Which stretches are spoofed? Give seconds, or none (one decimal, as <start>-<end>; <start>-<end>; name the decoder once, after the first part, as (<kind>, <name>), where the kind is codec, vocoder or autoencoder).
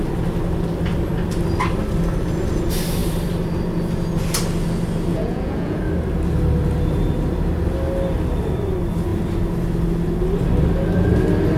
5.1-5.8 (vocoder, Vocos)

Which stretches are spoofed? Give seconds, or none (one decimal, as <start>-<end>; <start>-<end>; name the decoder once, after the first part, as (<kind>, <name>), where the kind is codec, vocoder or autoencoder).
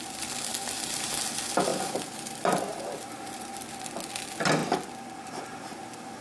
0.5-1.2 (vocoder, BigVGAN v2); 1.7-3.7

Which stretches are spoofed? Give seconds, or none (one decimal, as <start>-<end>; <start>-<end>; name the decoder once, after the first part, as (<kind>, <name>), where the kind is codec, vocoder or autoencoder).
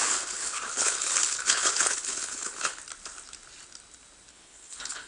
0.0-2.8 (codec, HILCodec); 4.3-5.1